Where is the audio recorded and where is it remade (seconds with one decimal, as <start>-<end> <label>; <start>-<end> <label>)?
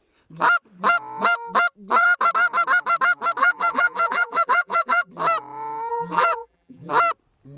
0.0-3.4 recorded; 3.4-5.1 remade; 5.1-5.9 recorded; 5.9-6.9 remade; 6.9-7.6 recorded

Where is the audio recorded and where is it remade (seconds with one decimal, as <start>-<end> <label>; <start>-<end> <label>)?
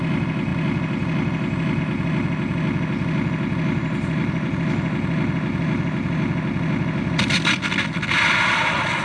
0.0-3.8 recorded; 3.8-4.5 remade; 4.5-9.0 recorded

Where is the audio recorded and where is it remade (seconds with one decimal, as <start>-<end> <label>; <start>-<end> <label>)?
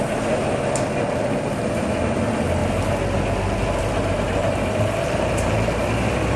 0.0-4.3 recorded; 4.3-5.8 remade; 5.8-6.4 recorded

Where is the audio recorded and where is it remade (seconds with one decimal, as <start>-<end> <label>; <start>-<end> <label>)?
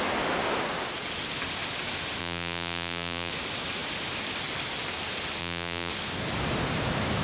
0.0-2.2 recorded; 2.2-3.3 remade; 3.3-5.4 recorded; 5.4-5.9 remade; 5.9-7.2 recorded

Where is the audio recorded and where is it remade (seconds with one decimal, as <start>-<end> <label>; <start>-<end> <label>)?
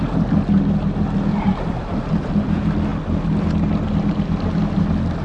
0.0-1.3 recorded; 1.3-2.4 remade; 2.4-5.2 recorded